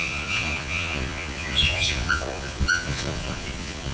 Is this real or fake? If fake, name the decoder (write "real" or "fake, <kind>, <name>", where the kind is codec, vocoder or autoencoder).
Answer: fake, vocoder, Vocos